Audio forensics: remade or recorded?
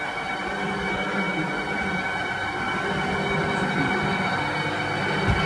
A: recorded